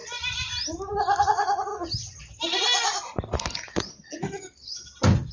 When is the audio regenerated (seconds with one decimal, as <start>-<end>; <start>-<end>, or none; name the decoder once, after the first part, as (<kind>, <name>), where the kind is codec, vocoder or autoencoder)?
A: 1.2-1.7 (vocoder, Vocos)